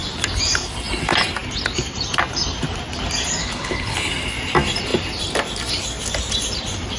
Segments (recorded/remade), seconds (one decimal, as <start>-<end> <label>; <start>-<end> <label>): 0.0-3.4 recorded; 3.4-4.1 remade; 4.1-7.0 recorded